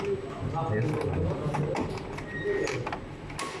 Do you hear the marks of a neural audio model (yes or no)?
no